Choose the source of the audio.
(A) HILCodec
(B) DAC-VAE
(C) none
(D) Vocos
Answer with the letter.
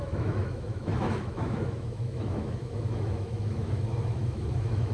B